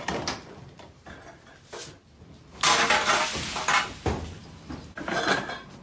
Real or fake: real